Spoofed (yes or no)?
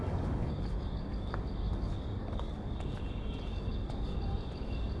yes